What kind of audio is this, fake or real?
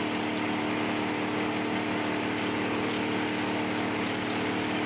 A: real